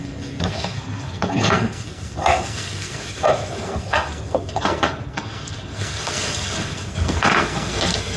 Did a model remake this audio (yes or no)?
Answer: yes